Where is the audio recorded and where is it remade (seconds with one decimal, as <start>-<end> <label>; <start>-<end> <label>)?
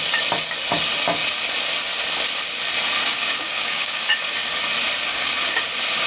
0.0-3.0 recorded; 3.0-4.1 remade; 4.1-5.1 recorded; 5.1-5.6 remade; 5.6-6.1 recorded